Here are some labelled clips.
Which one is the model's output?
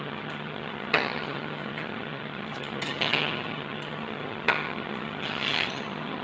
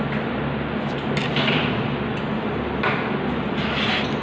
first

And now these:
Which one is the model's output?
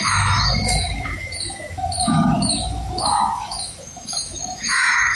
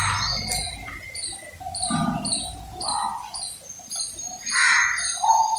first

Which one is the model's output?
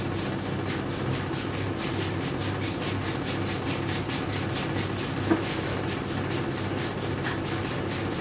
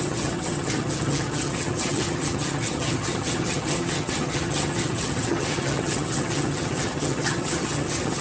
second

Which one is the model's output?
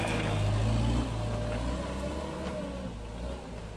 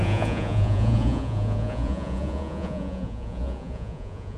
second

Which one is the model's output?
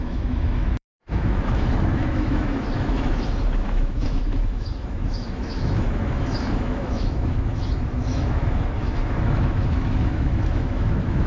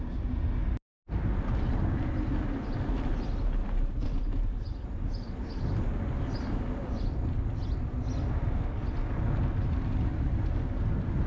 first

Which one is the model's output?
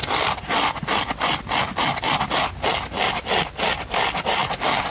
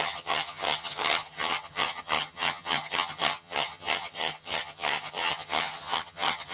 second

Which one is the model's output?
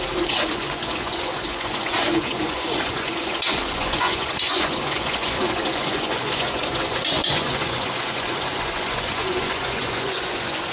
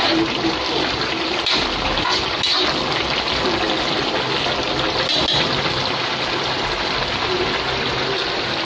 first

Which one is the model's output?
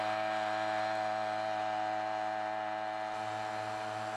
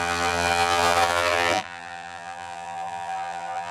second